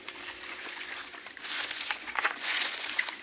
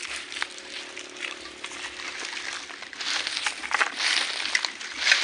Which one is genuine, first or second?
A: second